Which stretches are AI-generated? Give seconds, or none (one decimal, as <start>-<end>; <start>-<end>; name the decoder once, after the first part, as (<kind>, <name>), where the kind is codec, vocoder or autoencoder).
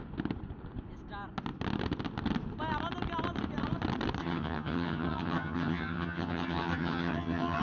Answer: 4.2-7.6 (vocoder, HiFi-GAN)